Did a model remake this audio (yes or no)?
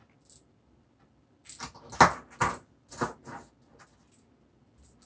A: no